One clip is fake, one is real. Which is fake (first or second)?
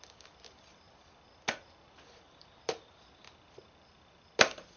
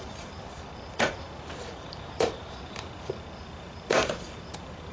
second